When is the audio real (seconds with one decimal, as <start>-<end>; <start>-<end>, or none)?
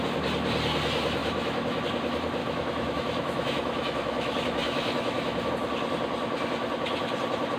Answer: 0.0-1.2; 1.8-2.4; 5.5-7.6